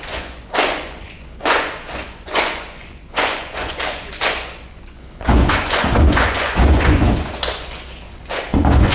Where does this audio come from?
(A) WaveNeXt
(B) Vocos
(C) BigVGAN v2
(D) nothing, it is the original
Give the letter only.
B